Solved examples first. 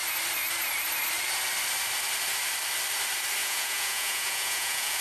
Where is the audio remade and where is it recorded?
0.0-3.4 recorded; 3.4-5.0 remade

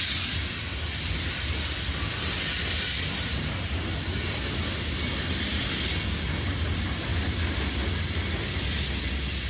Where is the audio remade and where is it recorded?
0.0-9.5 recorded

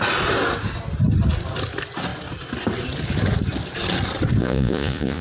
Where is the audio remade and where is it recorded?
0.0-4.4 recorded; 4.4-5.2 remade